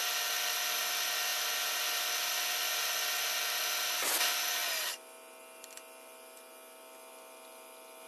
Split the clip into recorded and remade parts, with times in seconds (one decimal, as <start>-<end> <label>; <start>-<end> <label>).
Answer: 0.0-8.1 recorded